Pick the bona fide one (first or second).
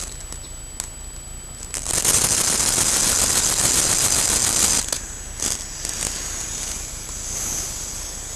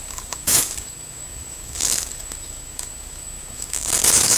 first